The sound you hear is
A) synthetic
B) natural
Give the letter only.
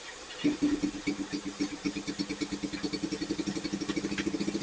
B